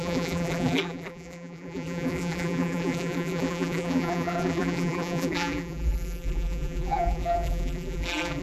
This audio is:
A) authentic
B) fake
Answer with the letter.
B